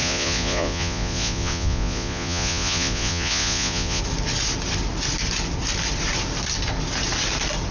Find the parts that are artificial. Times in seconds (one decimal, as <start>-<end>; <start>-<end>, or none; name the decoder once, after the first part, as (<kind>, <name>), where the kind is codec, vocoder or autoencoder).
0.0-4.0 (vocoder, Vocos)